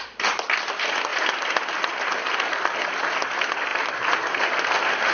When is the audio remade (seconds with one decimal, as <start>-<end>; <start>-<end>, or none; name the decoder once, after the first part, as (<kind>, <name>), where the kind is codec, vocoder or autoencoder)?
none